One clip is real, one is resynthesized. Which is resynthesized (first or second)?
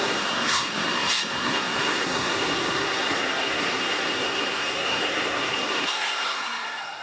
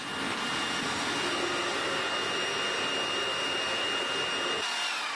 first